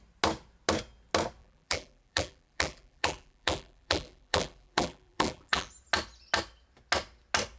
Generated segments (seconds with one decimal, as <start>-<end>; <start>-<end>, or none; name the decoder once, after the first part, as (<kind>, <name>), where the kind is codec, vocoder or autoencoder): 1.4-5.7 (vocoder, BigVGAN v2)